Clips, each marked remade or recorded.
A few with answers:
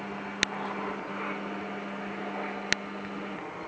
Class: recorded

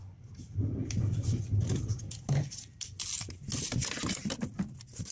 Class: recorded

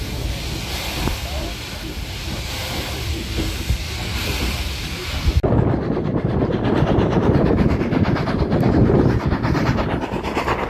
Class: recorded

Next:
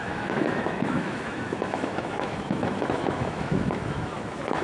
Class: remade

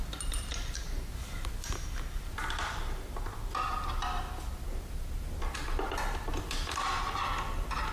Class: recorded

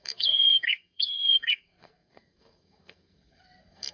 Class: remade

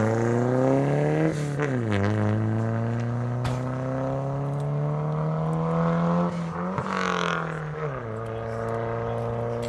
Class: recorded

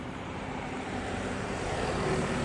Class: remade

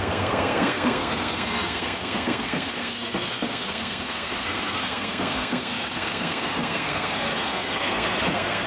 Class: remade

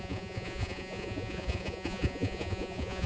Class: remade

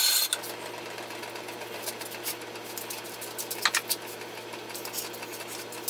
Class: recorded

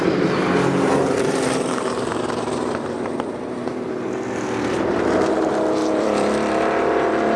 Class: remade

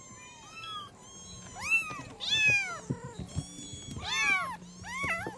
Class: recorded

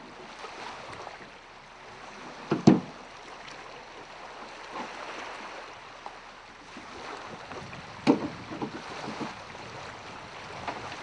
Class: recorded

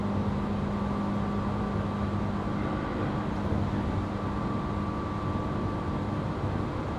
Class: recorded